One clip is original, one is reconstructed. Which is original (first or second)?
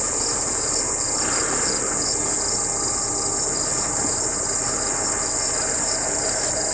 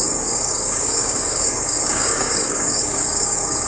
first